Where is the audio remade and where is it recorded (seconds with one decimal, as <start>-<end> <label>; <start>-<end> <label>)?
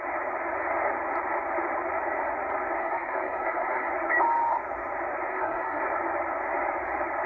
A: 0.0-2.8 recorded; 2.8-3.9 remade; 3.9-5.3 recorded; 5.3-5.8 remade; 5.8-7.3 recorded